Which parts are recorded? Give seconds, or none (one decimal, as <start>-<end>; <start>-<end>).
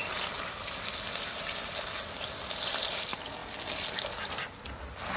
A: 0.0-5.2